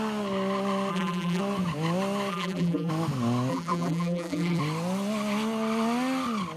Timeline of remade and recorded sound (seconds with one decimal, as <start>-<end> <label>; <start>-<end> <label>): 0.0-0.9 recorded; 0.9-1.4 remade; 1.4-2.3 recorded; 2.3-2.9 remade; 2.9-3.5 recorded; 3.5-4.6 remade; 4.6-6.6 recorded